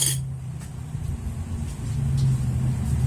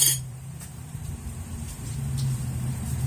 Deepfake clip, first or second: second